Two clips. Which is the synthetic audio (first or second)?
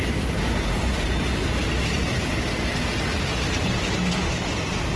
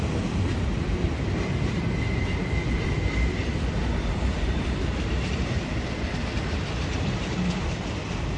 second